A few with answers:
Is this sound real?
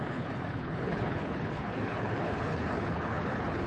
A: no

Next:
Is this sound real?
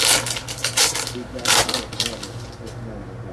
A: yes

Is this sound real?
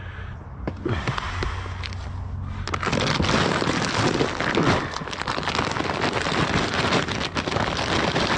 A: yes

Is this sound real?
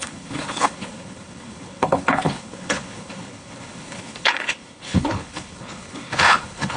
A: no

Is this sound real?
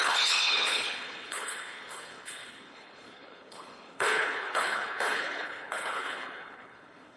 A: no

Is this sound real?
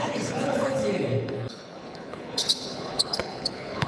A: no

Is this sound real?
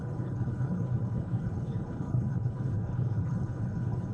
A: no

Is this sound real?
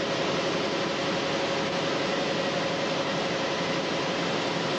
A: yes